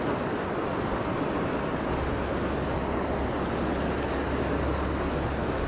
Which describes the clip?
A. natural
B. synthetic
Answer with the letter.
A